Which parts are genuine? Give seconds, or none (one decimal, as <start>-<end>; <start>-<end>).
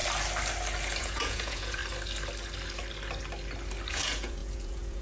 0.0-1.0; 1.8-3.9